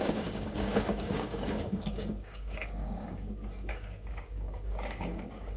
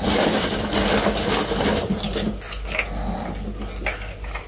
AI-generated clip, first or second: first